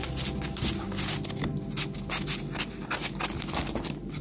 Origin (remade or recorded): recorded